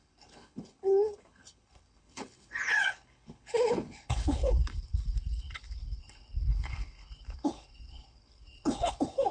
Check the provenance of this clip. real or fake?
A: fake